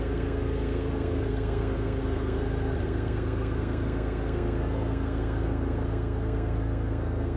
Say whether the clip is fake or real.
fake